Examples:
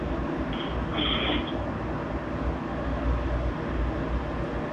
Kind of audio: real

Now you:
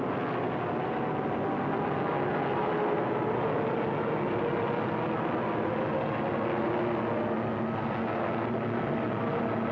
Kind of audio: real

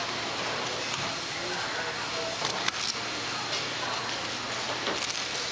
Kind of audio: real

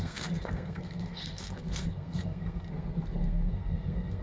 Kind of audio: fake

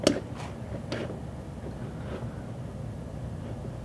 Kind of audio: real